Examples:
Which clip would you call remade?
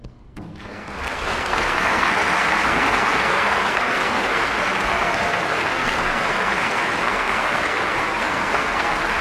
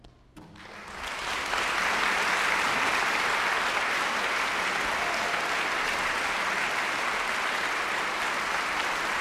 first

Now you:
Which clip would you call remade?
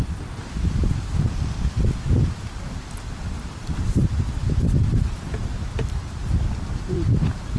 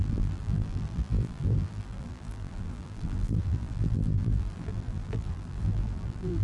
second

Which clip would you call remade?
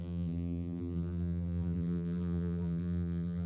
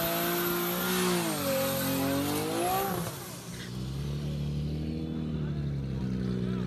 first